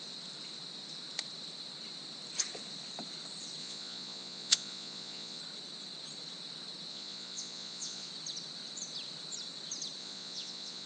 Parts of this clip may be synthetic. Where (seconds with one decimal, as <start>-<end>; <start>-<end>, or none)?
3.6-5.4; 6.9-8.1; 10.0-10.9